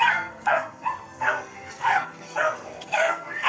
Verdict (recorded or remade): remade